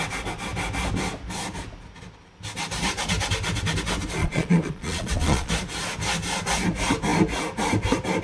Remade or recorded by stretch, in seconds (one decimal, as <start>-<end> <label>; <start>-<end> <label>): 0.0-4.2 recorded; 4.2-5.5 remade; 5.5-8.2 recorded